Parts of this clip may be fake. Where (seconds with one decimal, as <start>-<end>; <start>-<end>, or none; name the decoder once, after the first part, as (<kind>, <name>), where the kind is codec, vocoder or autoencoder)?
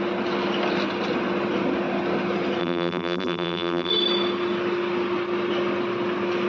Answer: 2.6-3.9 (vocoder, BigVGAN v2)